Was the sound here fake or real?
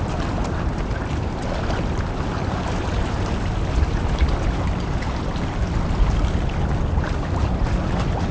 real